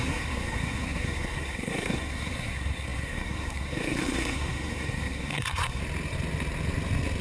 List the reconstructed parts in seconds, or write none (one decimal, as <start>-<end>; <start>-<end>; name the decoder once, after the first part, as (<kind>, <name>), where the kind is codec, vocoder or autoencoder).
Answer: 0.0-5.8 (codec, SNAC)